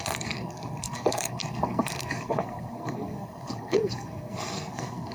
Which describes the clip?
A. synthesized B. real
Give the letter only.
A